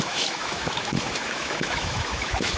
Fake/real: fake